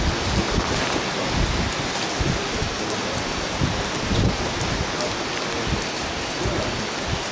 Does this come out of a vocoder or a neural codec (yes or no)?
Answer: no